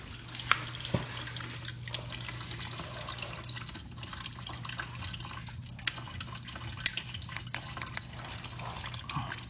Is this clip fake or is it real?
real